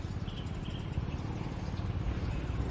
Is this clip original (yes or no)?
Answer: yes